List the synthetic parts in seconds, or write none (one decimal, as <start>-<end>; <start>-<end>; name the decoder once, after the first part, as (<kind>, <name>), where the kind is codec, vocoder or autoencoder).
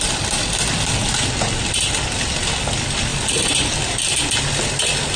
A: none